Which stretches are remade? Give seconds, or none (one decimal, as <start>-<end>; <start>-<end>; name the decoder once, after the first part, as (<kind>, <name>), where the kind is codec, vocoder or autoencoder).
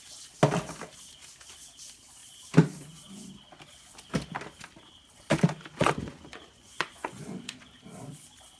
5.8-7.6 (vocoder, Vocos)